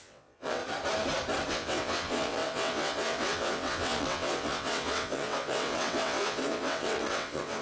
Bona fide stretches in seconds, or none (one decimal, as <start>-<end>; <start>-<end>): 0.6-1.5